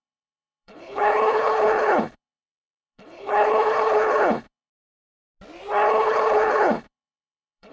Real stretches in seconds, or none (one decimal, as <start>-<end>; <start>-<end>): 4.7-5.9